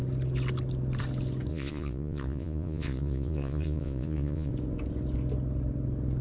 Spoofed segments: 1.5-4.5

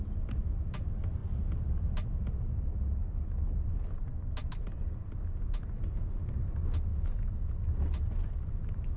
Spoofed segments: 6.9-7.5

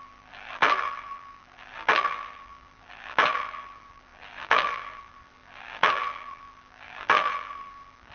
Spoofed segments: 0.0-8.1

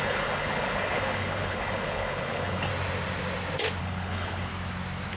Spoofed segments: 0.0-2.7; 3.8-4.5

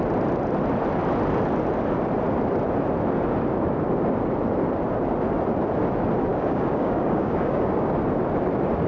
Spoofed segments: 6.3-7.9

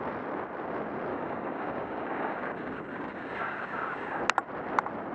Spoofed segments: 1.1-4.2

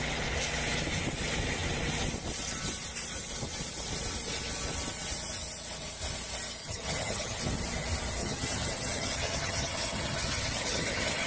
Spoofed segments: 6.6-7.4; 8.2-11.3